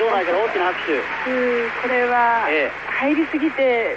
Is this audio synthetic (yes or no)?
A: no